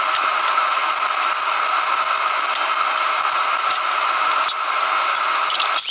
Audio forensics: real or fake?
real